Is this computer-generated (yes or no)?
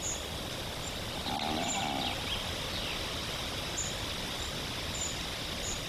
no